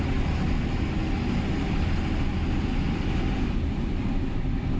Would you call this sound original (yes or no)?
yes